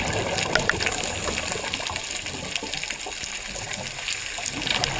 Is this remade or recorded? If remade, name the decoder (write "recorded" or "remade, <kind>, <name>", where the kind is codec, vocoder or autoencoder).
recorded